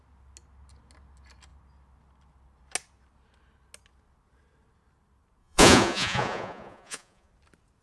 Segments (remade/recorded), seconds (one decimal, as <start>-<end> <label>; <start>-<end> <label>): 0.0-5.4 recorded; 5.4-7.3 remade; 7.3-7.8 recorded